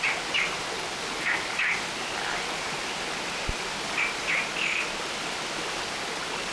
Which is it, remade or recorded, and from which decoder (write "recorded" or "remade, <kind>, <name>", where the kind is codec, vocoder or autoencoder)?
recorded